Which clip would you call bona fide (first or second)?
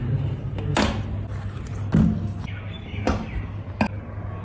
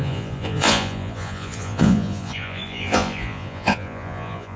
first